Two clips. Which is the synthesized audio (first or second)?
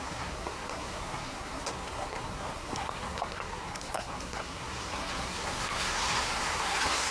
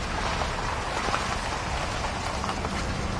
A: first